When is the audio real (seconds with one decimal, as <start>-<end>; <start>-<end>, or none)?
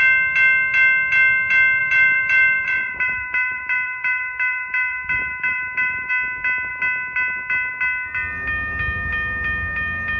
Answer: 0.0-1.8; 6.1-10.2